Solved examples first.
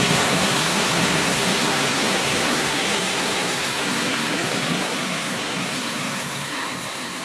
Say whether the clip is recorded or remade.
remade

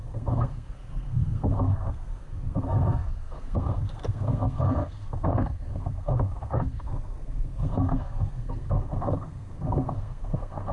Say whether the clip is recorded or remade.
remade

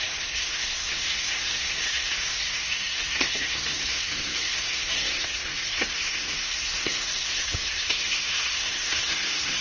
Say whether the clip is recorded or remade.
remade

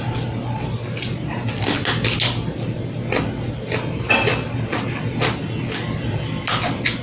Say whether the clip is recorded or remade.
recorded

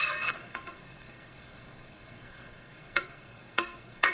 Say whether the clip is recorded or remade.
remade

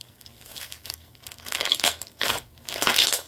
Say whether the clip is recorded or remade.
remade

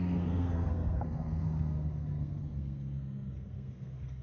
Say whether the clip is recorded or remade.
remade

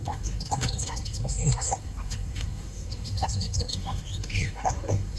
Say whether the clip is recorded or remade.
remade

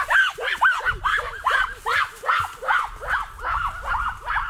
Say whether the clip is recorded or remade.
recorded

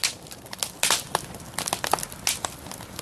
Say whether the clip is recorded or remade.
recorded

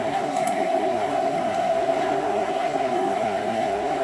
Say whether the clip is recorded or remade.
remade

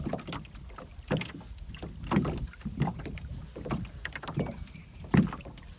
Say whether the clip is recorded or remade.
recorded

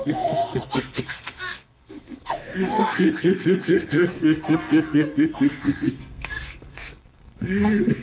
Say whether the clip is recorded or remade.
remade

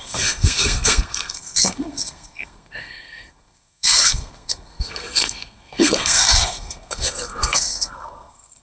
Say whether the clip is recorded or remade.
remade